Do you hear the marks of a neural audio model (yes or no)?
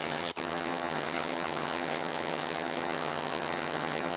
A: yes